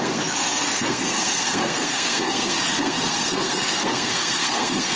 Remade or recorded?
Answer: remade